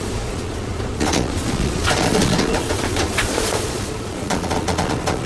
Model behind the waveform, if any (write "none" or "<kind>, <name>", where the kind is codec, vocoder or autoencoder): vocoder, Vocos